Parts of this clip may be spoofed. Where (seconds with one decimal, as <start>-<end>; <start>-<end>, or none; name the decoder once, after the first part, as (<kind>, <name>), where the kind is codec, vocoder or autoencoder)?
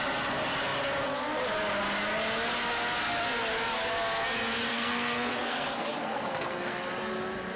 4.7-6.8 (codec, SNAC)